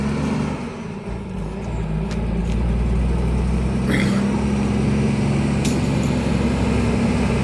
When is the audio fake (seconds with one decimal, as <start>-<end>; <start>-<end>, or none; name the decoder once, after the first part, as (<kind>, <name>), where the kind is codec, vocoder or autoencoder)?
2.4-3.0 (vocoder, BigVGAN v2)